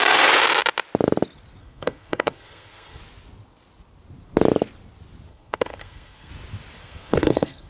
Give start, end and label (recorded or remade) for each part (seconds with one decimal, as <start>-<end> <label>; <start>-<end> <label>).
0.0-1.6 recorded; 1.6-3.0 remade; 3.0-5.3 recorded; 5.3-6.3 remade; 6.3-6.8 recorded; 6.8-7.7 remade

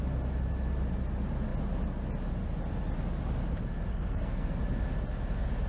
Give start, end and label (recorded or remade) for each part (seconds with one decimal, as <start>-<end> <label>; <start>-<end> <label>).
0.0-3.9 recorded; 3.9-4.6 remade; 4.6-5.7 recorded

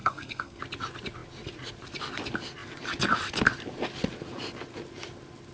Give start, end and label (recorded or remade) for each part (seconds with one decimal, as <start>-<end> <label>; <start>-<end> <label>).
0.0-0.6 remade; 0.6-5.5 recorded

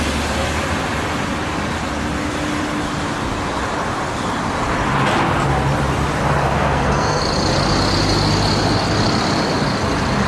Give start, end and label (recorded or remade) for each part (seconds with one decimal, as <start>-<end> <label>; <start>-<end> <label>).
0.0-6.4 recorded; 6.4-7.2 remade; 7.2-10.3 recorded

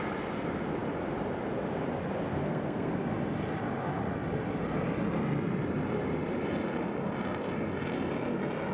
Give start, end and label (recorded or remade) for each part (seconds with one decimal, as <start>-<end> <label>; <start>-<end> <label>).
0.0-2.3 recorded; 2.3-2.9 remade; 2.9-8.7 recorded

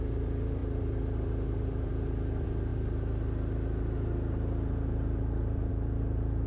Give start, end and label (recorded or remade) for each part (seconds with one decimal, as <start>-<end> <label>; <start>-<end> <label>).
0.0-6.5 recorded

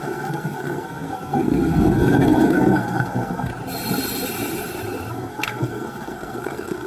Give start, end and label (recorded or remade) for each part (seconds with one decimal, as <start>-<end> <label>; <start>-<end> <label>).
0.0-3.5 remade; 3.5-5.1 recorded; 5.1-6.9 remade